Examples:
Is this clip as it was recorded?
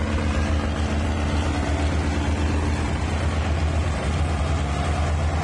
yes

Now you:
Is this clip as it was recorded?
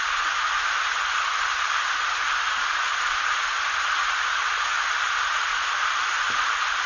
yes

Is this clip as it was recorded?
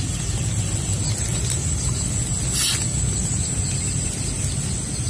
yes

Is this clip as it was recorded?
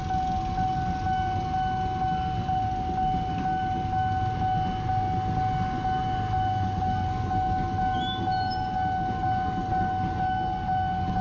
yes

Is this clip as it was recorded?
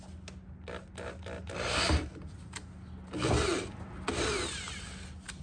yes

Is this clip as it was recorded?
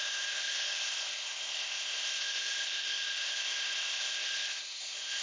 no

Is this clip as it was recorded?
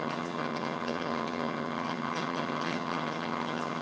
no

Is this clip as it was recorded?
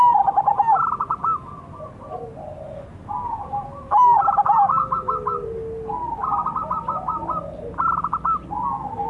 yes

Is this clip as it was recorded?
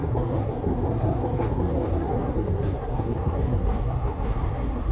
no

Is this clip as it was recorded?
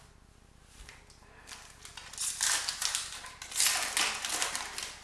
yes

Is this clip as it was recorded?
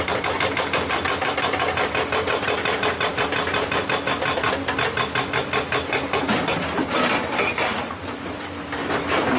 yes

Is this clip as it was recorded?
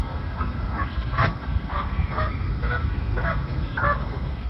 no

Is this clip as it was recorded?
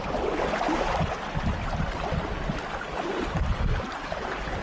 yes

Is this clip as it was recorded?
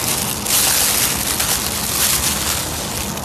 yes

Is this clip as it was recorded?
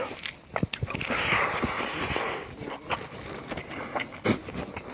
yes